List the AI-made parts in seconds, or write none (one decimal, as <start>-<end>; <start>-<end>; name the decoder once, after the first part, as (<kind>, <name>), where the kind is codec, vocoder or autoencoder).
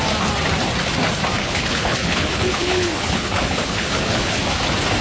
1.4-4.4 (codec, HILCodec)